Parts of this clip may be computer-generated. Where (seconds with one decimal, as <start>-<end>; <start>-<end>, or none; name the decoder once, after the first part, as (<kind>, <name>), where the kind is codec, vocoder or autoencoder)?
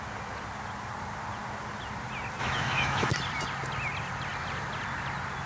2.4-3.1 (autoencoder, DAC-VAE)